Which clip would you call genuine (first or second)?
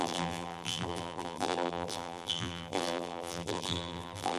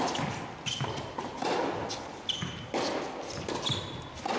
second